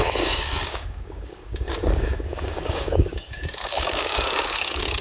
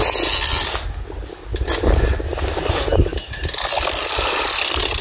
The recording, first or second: second